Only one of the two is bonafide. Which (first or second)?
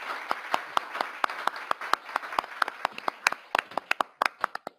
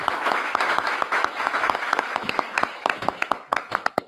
first